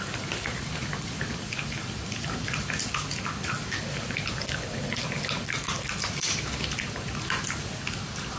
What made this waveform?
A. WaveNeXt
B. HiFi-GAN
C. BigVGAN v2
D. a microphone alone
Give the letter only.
D